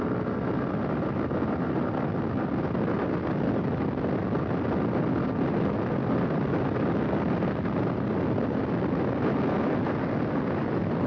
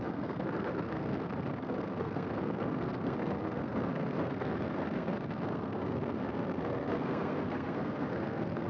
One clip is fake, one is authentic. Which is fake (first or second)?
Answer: second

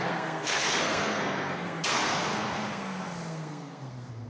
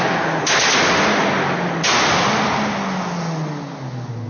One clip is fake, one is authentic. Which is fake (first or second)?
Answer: first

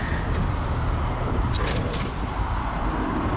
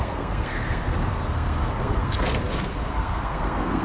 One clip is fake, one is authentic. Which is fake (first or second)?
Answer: second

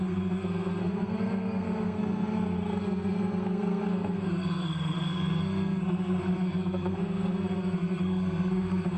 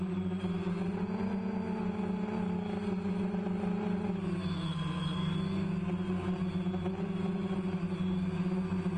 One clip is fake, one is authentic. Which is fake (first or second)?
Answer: first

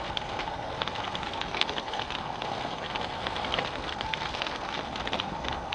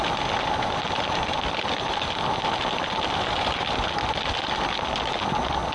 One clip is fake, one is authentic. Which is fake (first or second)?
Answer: first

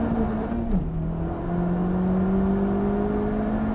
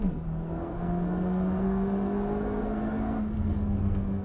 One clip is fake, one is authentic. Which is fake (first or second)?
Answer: second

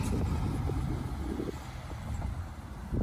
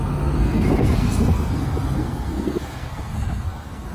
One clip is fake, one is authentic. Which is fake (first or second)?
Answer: second